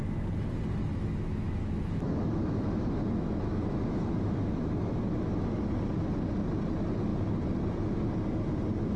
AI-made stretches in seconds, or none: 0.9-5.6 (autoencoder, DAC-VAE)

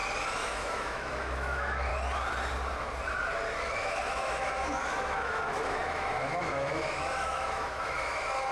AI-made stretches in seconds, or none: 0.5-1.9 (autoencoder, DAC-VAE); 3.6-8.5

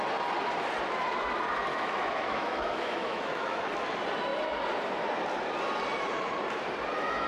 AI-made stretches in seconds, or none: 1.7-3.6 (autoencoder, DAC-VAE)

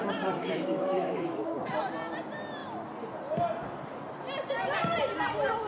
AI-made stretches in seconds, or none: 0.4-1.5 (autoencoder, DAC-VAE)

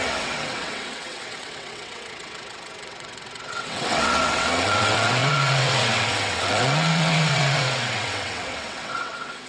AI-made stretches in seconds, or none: 0.0-9.5 (vocoder, WaveNeXt)

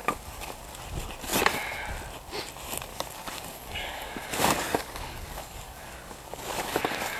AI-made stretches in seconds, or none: 0.0-0.6 (codec, DAC); 2.9-7.2

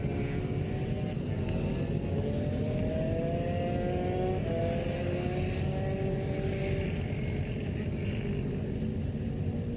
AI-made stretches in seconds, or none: none

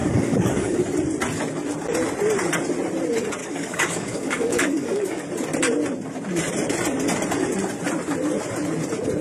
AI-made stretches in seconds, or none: 0.0-0.8 (codec, DAC); 3.4-5.2